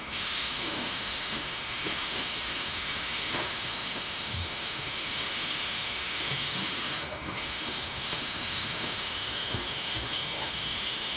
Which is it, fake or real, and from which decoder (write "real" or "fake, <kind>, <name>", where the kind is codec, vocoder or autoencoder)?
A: fake, autoencoder, DAC-VAE